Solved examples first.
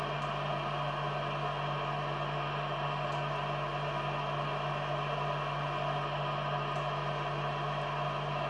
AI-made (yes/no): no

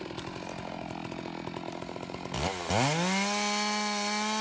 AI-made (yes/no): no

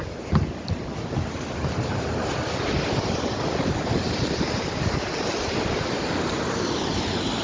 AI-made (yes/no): no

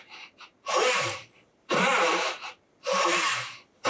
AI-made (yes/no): yes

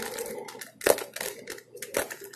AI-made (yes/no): no